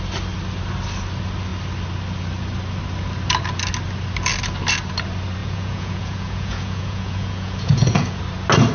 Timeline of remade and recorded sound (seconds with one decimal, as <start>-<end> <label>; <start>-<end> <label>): 0.0-5.4 recorded; 5.4-8.2 remade; 8.2-8.7 recorded